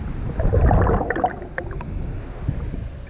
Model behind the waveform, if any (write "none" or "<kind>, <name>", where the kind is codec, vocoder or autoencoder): none